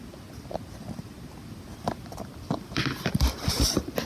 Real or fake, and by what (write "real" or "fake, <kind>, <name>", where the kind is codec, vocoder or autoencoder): real